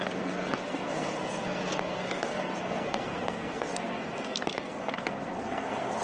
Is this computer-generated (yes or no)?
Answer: yes